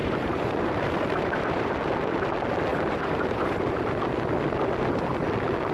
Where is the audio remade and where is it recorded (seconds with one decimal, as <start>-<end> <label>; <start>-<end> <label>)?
0.0-1.7 remade; 1.7-2.7 recorded; 2.7-3.6 remade; 3.6-5.7 recorded